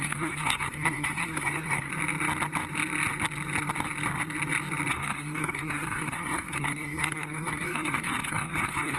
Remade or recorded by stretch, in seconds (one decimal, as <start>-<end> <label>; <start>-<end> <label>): 0.0-1.9 remade; 1.9-4.9 recorded; 4.9-9.0 remade